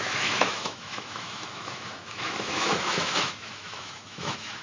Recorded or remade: remade